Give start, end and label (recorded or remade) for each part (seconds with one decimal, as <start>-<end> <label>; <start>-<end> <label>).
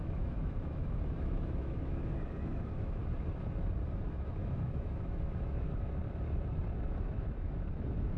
0.0-3.0 remade; 3.0-3.9 recorded; 3.9-6.0 remade; 6.0-6.8 recorded; 6.8-8.2 remade